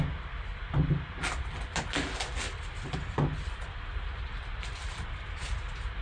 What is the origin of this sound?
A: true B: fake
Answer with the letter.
A